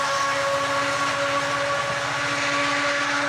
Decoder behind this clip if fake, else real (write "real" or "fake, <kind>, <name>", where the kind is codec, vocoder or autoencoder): real